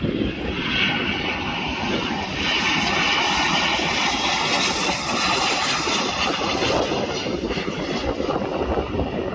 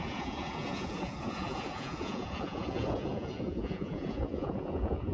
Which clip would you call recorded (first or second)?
first